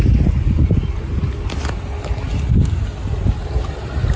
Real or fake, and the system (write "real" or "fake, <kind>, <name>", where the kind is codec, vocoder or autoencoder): real